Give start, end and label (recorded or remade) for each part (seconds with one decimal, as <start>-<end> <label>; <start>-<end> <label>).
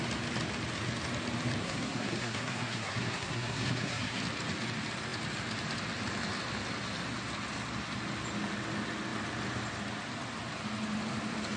0.0-1.6 recorded; 1.6-4.2 remade; 4.2-11.6 recorded